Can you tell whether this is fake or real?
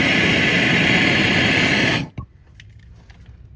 real